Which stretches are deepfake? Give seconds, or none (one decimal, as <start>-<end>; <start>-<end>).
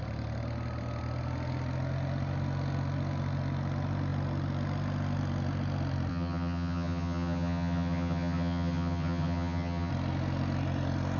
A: 6.1-9.9